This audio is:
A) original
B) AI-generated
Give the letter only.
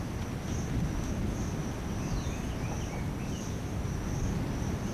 A